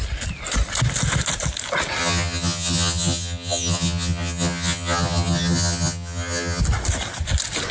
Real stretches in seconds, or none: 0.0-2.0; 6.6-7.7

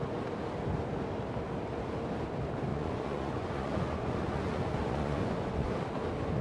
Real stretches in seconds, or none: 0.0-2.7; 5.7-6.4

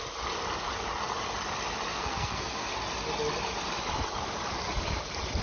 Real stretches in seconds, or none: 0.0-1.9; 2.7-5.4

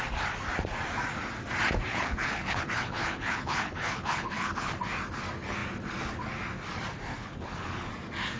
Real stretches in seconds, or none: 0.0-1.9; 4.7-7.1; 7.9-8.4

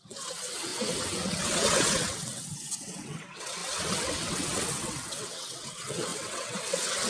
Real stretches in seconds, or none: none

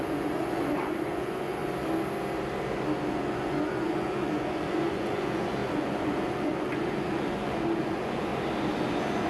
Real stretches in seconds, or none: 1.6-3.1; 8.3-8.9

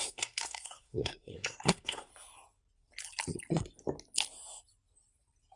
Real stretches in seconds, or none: 2.1-5.6